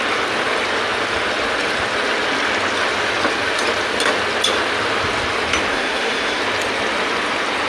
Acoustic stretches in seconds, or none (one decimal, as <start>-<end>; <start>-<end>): 0.0-5.7; 6.4-7.7